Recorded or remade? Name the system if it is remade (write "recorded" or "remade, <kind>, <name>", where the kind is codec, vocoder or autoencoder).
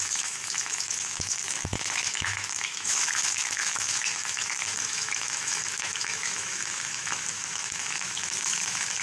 remade, autoencoder, DAC-VAE